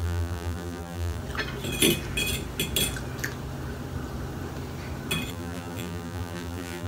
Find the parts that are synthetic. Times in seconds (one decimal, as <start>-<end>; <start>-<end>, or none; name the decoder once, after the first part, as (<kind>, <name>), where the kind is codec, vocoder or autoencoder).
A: 0.0-1.2 (vocoder, BigVGAN v2); 5.3-6.9